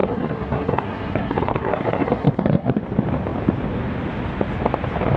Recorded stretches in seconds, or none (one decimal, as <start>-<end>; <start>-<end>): 2.8-5.2